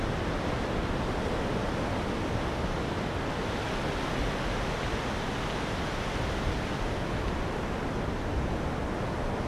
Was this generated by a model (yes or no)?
no